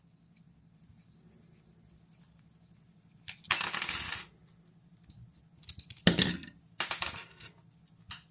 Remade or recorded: recorded